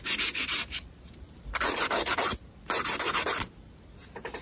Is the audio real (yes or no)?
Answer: no